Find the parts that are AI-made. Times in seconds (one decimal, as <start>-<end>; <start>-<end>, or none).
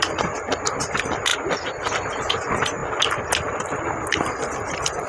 none